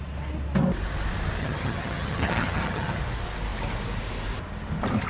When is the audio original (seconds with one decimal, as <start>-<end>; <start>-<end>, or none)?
0.0-1.4; 3.0-5.1